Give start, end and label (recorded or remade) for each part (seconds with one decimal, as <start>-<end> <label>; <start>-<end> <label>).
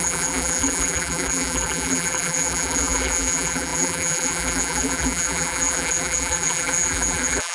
0.0-7.5 remade